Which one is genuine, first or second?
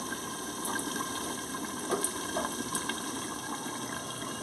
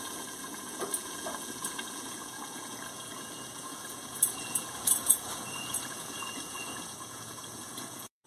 first